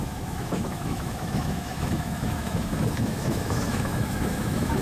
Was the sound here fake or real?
fake